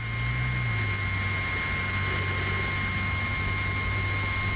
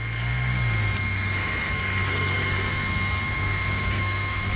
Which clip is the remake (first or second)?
second